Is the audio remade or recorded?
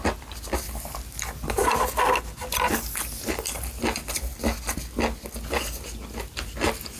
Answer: recorded